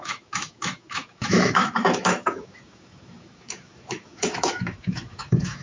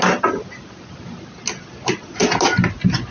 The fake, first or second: first